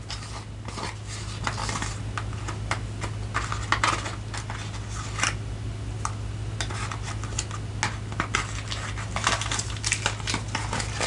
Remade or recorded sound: recorded